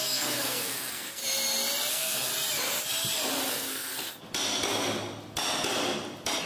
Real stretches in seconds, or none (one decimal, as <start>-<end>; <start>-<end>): 1.2-1.9; 2.3-3.5; 3.9-6.5